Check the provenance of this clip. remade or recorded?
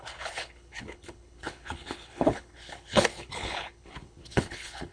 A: remade